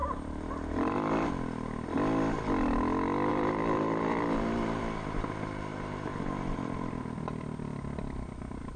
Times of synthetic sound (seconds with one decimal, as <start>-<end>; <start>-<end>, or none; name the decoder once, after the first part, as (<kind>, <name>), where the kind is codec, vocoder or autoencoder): 0.0-1.3 (vocoder, BigVGAN v2); 3.3-4.8; 5.7-7.0